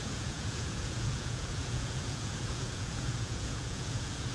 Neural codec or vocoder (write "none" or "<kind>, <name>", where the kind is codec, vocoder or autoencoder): vocoder, Vocos